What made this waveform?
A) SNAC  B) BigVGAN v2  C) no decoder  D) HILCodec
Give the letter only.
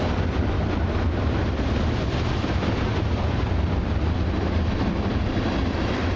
B